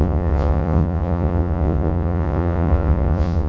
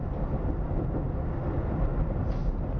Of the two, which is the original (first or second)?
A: second